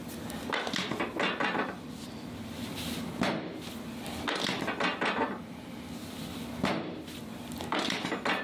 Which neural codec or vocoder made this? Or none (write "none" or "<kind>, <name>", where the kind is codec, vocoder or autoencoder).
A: none